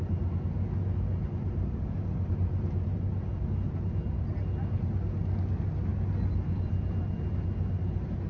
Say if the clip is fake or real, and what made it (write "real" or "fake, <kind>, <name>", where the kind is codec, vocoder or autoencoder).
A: real